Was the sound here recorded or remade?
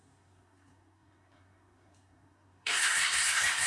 remade